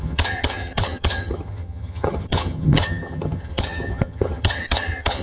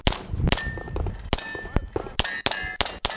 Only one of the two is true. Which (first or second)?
second